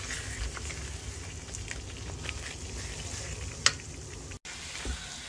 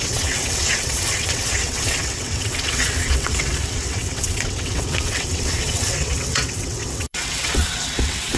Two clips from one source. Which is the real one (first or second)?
first